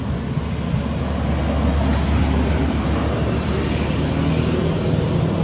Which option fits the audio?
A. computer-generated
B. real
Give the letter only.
B